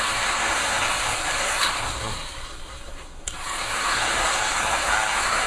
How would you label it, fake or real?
fake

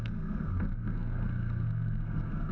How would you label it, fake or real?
fake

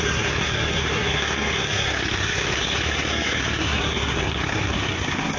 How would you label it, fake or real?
fake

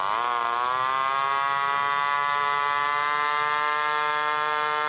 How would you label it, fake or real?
real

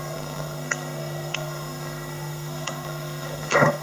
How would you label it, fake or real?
fake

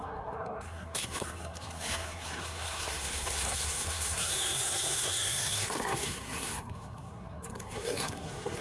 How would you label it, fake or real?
fake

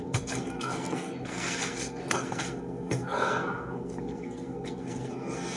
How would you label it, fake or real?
fake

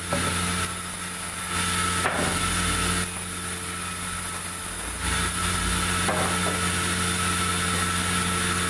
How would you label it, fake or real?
real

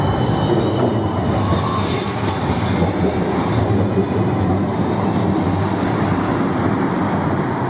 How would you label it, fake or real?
real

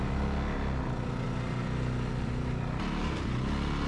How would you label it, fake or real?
real